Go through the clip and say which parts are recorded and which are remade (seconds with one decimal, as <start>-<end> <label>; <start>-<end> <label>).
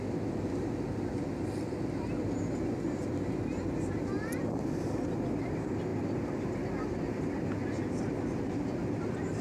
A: 0.0-9.4 recorded